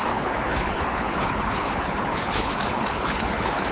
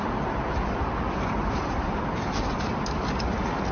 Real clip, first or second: second